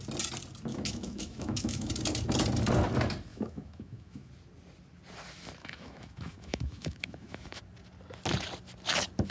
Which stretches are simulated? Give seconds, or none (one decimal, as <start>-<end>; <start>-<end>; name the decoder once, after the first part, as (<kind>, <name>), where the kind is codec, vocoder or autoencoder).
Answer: 0.7-1.9 (autoencoder, DAC-VAE); 3.3-4.3; 5.6-7.6